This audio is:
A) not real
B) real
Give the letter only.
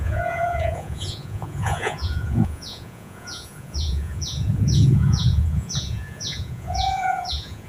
A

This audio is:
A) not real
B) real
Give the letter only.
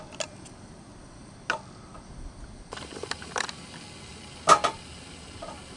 B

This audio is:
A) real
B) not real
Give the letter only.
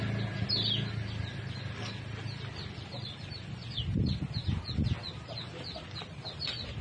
A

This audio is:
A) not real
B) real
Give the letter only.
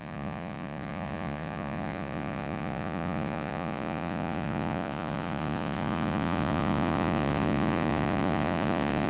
A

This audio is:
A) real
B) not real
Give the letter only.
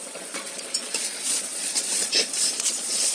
B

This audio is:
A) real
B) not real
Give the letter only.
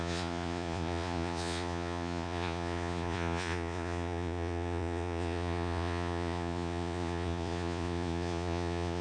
B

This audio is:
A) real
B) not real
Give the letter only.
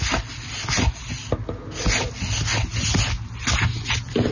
A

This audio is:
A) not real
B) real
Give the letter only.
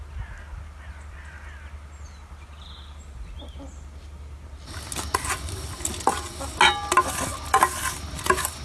B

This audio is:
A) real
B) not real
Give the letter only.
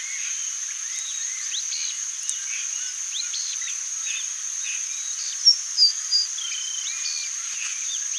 A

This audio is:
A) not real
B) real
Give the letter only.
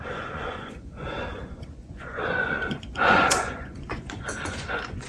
A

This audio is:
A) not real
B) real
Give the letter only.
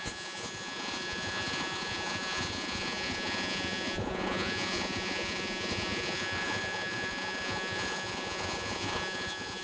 A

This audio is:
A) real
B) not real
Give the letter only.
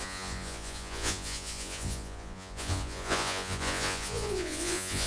B